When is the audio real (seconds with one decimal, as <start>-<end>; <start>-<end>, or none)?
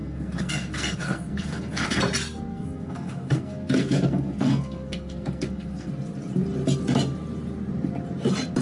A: 2.0-2.5; 5.9-8.6